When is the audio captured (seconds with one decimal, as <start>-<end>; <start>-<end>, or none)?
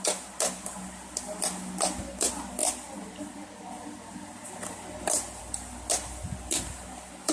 0.0-7.3